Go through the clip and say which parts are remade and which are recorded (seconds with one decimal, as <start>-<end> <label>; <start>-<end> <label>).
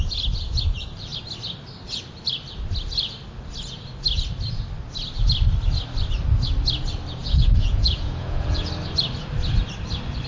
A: 0.0-7.2 recorded; 7.2-8.7 remade; 8.7-10.3 recorded